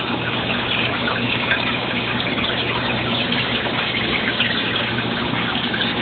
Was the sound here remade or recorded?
remade